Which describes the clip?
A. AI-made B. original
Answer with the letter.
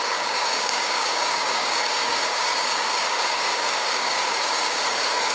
A